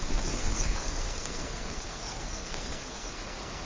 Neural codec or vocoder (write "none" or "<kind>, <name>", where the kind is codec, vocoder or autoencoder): codec, SNAC